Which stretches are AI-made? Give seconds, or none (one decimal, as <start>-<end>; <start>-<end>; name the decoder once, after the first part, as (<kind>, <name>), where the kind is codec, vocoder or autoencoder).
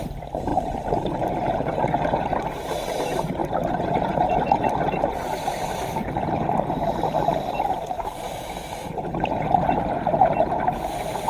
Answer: 0.5-2.2 (vocoder, BigVGAN v2); 3.4-4.7